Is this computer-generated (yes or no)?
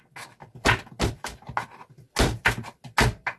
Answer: no